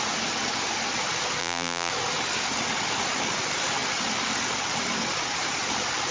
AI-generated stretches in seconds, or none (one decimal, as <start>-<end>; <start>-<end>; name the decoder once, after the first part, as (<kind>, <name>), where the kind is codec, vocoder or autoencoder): 1.4-1.9 (vocoder, BigVGAN v2)